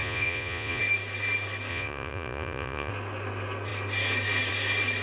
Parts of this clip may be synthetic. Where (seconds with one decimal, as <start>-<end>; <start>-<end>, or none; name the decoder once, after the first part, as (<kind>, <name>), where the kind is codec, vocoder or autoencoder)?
0.0-0.8 (vocoder, Vocos); 1.7-2.9